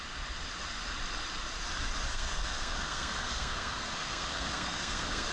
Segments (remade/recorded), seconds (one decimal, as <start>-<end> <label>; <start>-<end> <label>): 0.0-2.1 recorded; 2.1-5.3 remade